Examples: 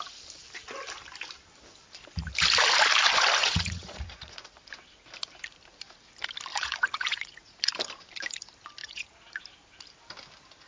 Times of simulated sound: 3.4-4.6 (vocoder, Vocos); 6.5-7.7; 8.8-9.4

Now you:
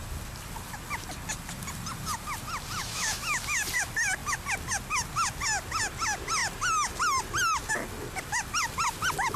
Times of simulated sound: 2.8-3.4 (autoencoder, DAC-VAE)

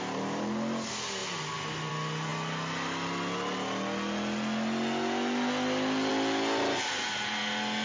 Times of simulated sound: none

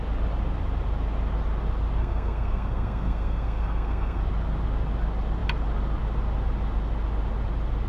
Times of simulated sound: 2.0-4.2 (codec, SNAC)

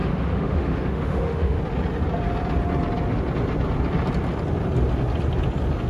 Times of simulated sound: 0.0-1.6 (autoencoder, DAC-VAE)